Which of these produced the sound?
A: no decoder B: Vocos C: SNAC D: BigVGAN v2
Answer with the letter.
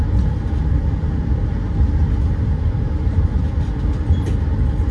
A